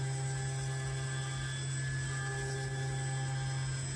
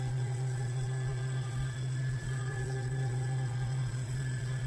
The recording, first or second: first